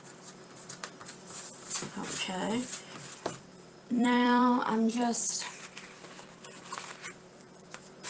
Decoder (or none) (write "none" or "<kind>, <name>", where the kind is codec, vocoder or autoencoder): vocoder, BigVGAN v2